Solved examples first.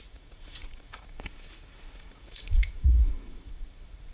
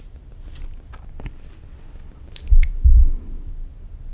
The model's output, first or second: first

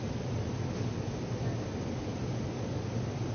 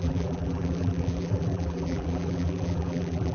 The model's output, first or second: second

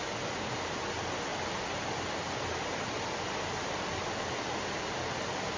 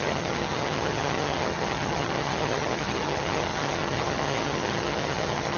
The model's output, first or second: second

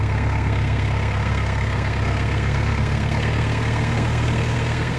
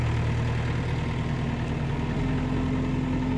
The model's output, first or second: first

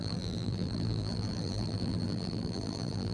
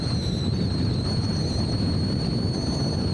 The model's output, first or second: first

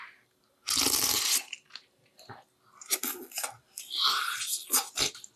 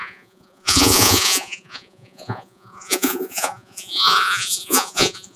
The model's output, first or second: second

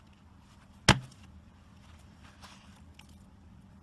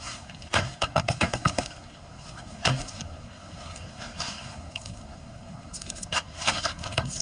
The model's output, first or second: second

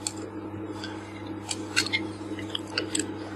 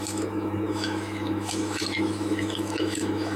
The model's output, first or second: second